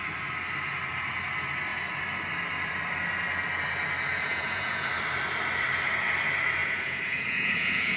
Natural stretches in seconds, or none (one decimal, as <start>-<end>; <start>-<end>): 0.0-4.1; 4.9-6.6